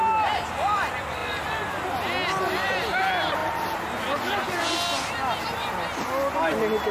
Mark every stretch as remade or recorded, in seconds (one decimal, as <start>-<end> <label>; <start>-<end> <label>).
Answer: 0.0-6.9 recorded